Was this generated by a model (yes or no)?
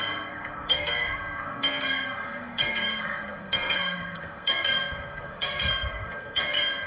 yes